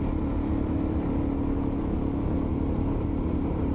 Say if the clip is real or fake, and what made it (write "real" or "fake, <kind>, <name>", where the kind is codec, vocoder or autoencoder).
real